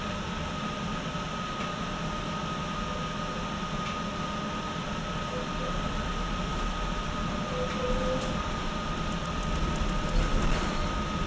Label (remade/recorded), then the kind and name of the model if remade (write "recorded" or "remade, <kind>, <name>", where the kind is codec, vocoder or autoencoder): recorded